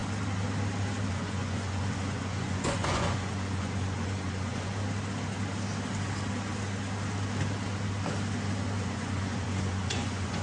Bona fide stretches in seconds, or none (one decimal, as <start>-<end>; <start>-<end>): 0.0-1.1; 4.7-8.8